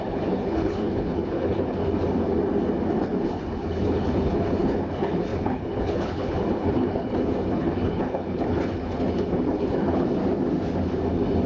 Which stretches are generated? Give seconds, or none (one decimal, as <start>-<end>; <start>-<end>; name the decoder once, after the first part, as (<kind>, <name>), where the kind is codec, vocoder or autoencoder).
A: 0.0-1.8 (codec, HILCodec); 3.0-10.2